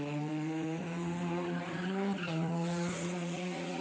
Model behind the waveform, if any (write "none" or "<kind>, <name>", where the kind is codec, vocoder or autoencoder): vocoder, Vocos